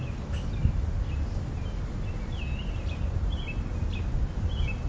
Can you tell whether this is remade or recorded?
recorded